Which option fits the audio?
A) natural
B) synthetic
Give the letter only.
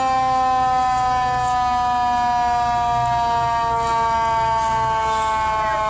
A